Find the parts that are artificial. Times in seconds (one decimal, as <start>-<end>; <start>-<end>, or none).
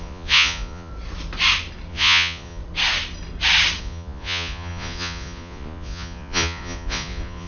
0.0-0.9; 1.9-2.6; 3.8-7.5